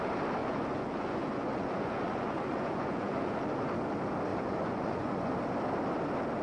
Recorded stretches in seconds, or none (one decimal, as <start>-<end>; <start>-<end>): 0.0-0.4; 3.4-4.3; 5.3-6.4